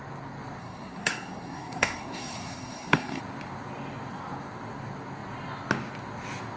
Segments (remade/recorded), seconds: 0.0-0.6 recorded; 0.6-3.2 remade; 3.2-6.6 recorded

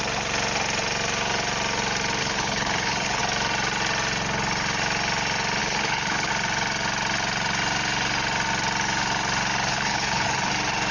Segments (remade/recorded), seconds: 0.0-2.2 recorded; 2.2-3.2 remade; 3.2-5.6 recorded; 5.6-6.3 remade; 6.3-9.7 recorded; 9.7-10.5 remade; 10.5-10.9 recorded

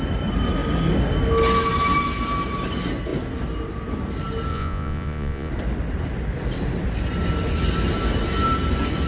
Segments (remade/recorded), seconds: 0.0-4.5 recorded; 4.5-5.5 remade; 5.5-9.1 recorded

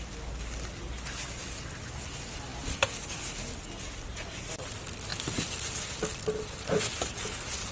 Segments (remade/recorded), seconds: 0.0-7.7 recorded